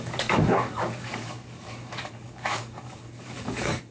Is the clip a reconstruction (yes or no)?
yes